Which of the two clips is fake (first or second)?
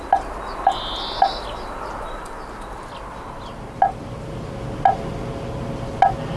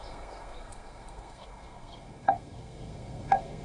second